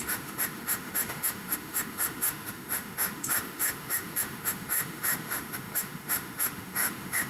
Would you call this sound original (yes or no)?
no